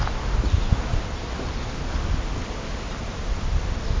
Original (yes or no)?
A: yes